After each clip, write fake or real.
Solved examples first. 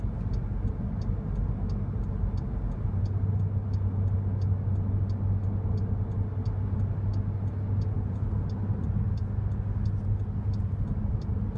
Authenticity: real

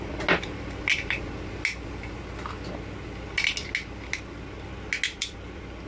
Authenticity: real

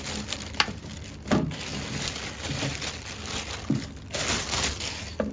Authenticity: real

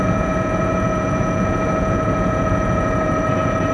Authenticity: fake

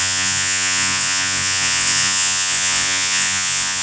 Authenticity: fake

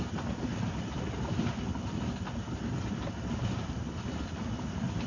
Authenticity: real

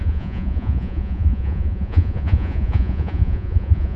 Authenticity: fake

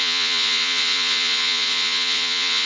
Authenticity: fake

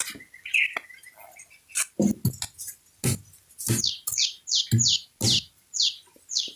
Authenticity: real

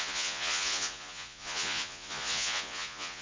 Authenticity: fake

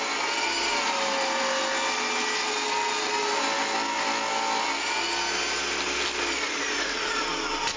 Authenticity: real